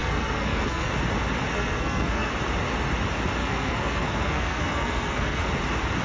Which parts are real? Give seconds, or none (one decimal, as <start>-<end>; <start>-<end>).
0.9-1.5; 2.3-3.4; 5.5-6.0